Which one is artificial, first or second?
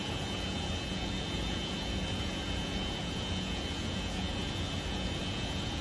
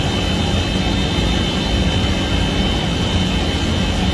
first